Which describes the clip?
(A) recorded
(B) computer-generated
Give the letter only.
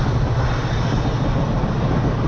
A